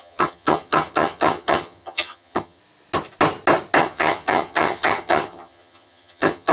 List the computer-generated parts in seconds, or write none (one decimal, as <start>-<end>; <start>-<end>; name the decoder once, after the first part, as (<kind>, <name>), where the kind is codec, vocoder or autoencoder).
0.0-2.6 (vocoder, HiFi-GAN); 3.8-6.5